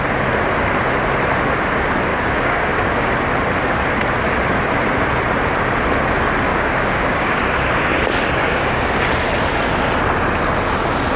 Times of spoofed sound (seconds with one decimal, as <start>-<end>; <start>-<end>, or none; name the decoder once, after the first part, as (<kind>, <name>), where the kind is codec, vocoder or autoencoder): 2.1-3.1 (codec, DAC); 6.5-7.4; 8.4-8.9